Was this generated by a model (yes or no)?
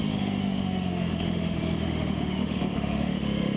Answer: yes